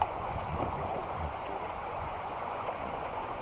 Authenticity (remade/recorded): remade